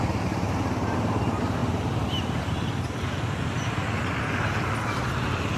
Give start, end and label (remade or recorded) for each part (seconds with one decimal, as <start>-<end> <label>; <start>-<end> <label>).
0.0-5.6 recorded